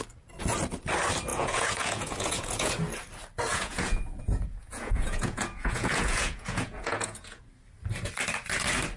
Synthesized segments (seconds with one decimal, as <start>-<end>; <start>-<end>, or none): 1.3-2.7; 3.5-7.5